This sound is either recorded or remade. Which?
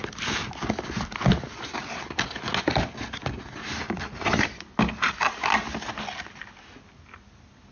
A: recorded